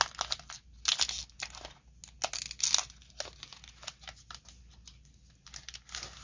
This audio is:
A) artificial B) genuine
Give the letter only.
B